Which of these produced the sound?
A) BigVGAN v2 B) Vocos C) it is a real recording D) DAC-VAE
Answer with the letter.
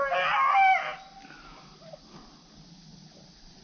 C